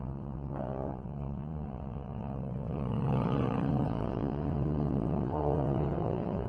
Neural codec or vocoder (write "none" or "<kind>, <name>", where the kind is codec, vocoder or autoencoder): vocoder, WaveNeXt